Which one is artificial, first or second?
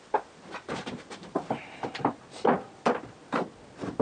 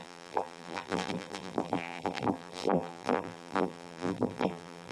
second